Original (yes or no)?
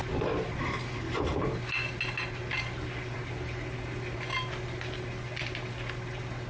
yes